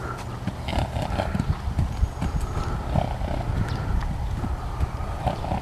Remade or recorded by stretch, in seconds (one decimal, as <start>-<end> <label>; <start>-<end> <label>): 0.0-5.6 recorded